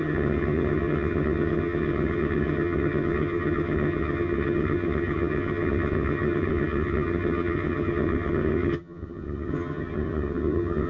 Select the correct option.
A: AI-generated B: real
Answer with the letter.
A